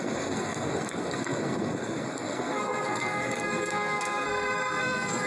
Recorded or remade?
remade